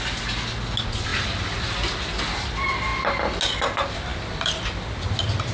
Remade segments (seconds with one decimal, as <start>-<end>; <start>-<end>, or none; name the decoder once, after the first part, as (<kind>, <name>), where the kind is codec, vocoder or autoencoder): 4.1-4.8 (vocoder, BigVGAN v2)